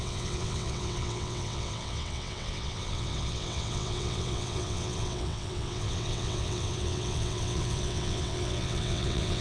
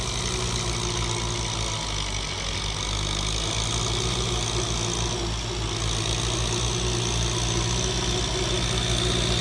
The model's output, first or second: first